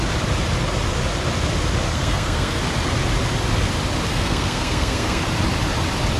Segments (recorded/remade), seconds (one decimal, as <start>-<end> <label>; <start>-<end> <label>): 0.0-1.9 recorded; 1.9-2.6 remade; 2.6-4.1 recorded; 4.1-5.2 remade; 5.2-6.2 recorded